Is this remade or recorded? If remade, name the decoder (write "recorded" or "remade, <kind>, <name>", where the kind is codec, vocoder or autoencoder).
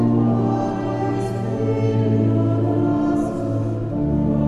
recorded